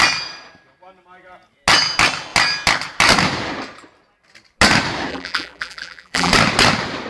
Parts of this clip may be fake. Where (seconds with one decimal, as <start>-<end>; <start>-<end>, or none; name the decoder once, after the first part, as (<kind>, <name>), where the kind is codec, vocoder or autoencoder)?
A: 5.1-6.3 (vocoder, BigVGAN v2)

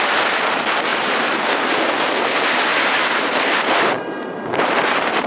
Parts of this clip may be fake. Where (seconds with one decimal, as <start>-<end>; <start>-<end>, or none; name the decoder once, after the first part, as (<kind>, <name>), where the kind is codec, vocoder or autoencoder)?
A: 0.9-1.4 (vocoder, BigVGAN v2); 2.7-5.3

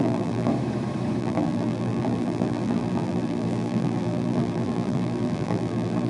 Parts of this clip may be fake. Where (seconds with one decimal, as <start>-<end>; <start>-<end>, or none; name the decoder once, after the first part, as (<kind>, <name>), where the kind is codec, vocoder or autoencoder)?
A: 0.0-0.5 (vocoder, BigVGAN v2); 1.2-6.1

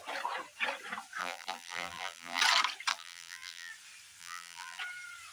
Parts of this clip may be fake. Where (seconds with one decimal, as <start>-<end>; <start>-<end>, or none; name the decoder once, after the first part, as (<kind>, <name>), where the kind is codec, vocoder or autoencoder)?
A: 1.2-2.4 (vocoder, BigVGAN v2); 2.9-3.7; 4.2-4.8

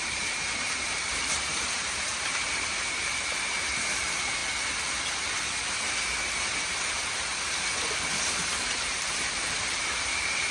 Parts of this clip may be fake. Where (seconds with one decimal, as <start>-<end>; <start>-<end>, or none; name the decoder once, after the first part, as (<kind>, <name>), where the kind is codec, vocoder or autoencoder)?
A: 0.0-4.4 (vocoder, BigVGAN v2); 8.2-10.5

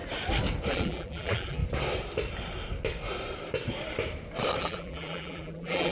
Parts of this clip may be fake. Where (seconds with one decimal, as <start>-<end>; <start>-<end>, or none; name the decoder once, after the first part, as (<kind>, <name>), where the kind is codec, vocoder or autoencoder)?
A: 0.7-1.6 (vocoder, BigVGAN v2); 4.6-5.9

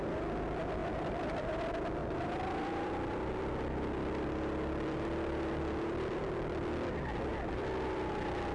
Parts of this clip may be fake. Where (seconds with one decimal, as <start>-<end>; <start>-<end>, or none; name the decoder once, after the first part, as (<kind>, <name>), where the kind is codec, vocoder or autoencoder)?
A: 0.8-1.5 (vocoder, BigVGAN v2); 2.0-6.2; 7.3-8.1

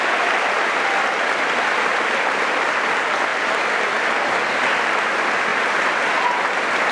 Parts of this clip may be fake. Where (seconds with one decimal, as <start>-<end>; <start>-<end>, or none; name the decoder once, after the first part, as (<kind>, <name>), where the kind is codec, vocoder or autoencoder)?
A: 1.9-2.6 (vocoder, BigVGAN v2); 3.3-4.3; 5.5-6.4